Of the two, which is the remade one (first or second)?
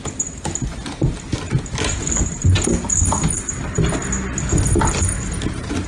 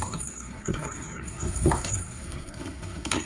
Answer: second